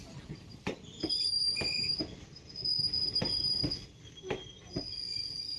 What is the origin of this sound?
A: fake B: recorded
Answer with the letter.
B